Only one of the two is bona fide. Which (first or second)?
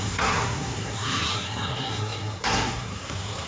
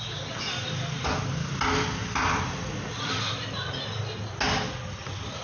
second